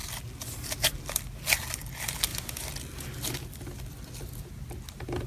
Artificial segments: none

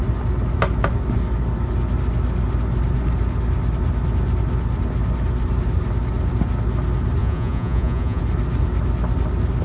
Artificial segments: 7.2-8.2

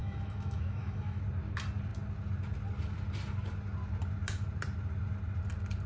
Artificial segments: 0.0-1.2

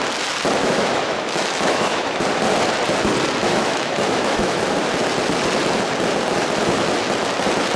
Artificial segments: 0.6-2.2; 3.4-4.6

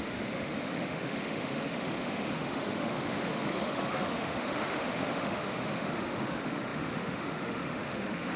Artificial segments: 0.0-8.4

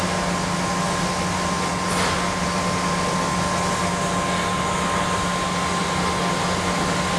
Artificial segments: none

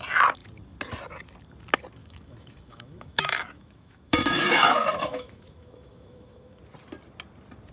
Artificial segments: 2.0-6.6